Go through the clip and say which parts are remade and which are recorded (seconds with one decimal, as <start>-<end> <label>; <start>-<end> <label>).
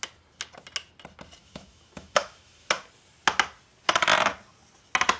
0.0-1.4 recorded; 1.4-2.7 remade; 2.7-5.2 recorded